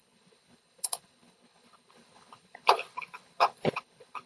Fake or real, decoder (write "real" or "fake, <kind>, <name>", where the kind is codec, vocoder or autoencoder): fake, codec, HILCodec